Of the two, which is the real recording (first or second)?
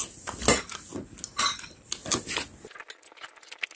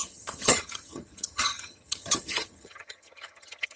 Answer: first